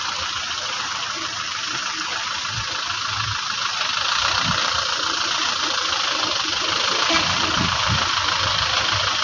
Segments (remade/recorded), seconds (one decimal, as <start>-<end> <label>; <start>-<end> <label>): 0.0-1.6 remade; 1.6-2.4 recorded; 2.4-9.2 remade